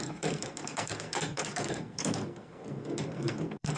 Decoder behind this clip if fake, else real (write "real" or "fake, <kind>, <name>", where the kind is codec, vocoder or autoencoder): fake, codec, SNAC